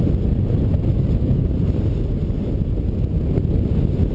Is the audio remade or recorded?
recorded